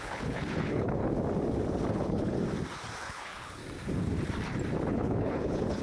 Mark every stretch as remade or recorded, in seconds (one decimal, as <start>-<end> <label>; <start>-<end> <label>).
0.0-1.0 remade; 1.0-1.9 recorded; 1.9-2.3 remade; 2.3-3.0 recorded; 3.0-3.6 remade; 3.6-4.9 recorded; 4.9-5.8 remade